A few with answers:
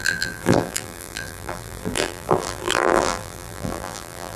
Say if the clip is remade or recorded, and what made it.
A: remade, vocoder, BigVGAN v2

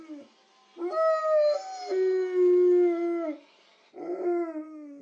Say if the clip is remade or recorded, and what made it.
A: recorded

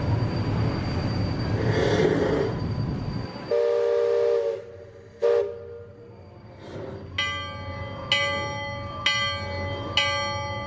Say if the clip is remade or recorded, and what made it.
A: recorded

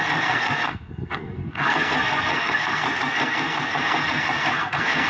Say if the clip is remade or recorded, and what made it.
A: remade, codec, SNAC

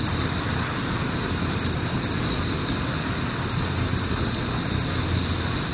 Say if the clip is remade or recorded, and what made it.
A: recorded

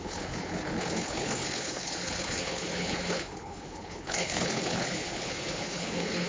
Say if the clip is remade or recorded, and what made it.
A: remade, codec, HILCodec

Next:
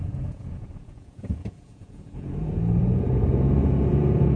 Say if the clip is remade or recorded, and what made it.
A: remade, vocoder, Vocos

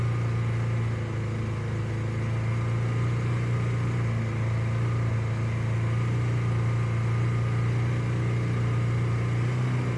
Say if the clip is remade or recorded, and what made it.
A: recorded